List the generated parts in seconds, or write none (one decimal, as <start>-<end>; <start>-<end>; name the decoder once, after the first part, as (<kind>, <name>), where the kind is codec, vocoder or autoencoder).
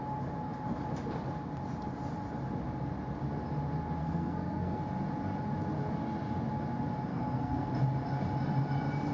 4.0-4.8 (codec, SNAC); 7.1-7.7